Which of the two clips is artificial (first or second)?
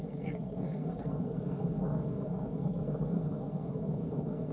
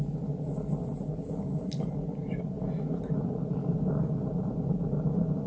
first